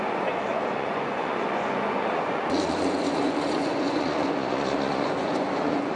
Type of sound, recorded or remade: remade